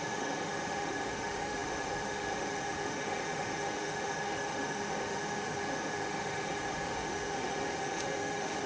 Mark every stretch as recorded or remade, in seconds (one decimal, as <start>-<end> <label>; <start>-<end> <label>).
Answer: 0.0-8.7 remade